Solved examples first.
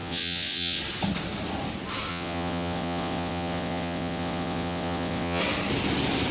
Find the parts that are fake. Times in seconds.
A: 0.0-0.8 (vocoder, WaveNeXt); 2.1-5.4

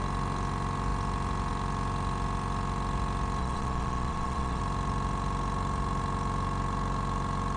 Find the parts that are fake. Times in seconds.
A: 3.4-4.6 (vocoder, Vocos)

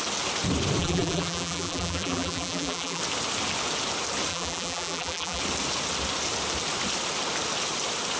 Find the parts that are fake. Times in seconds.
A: 0.8-3.0 (vocoder, BigVGAN v2); 4.3-5.4

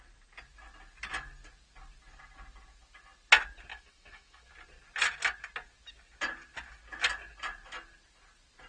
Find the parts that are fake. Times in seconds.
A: 3.7-4.5 (autoencoder, DAC-VAE)

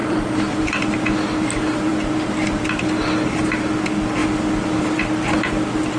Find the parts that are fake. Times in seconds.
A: 0.0-1.0 (vocoder, BigVGAN v2)